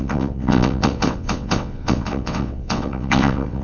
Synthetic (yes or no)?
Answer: yes